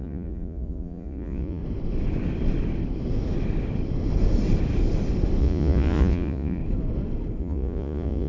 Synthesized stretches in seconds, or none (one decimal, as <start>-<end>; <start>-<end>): 0.0-1.6; 5.4-6.6; 7.4-8.3